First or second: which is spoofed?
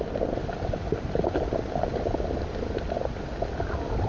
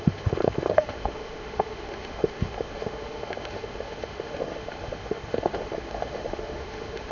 second